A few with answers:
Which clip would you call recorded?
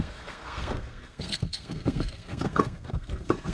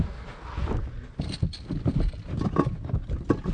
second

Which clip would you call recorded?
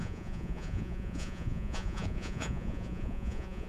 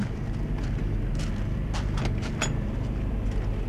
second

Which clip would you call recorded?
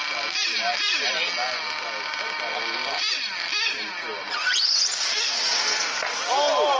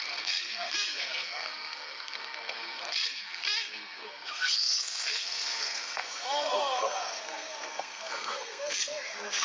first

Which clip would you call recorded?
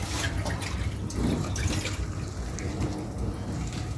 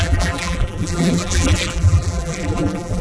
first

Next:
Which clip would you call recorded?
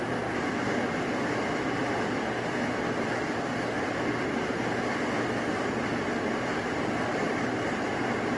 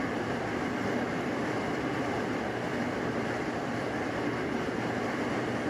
first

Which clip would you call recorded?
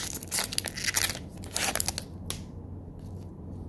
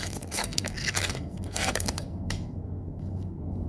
first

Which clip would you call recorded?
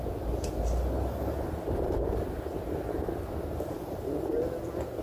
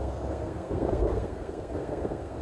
first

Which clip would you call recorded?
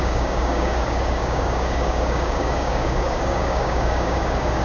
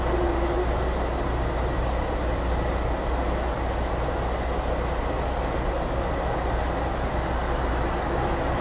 second